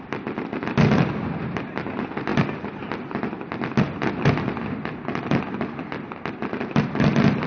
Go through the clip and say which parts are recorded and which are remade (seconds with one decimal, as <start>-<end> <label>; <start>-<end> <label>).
0.0-7.5 recorded